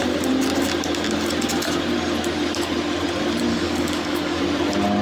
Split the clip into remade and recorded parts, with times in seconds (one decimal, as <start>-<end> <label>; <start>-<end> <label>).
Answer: 0.0-3.5 recorded; 3.5-4.4 remade; 4.4-5.0 recorded